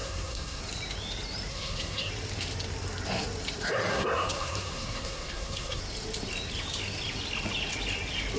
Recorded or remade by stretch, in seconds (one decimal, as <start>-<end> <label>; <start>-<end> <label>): 0.0-0.6 remade; 0.6-1.5 recorded; 1.5-2.1 remade; 2.1-3.9 recorded; 3.9-5.8 remade; 5.8-8.4 recorded